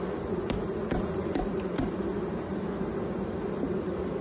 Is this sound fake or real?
real